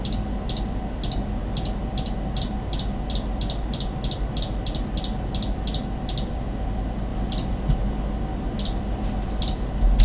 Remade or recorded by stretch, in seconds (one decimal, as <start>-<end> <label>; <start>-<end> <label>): 0.0-10.0 recorded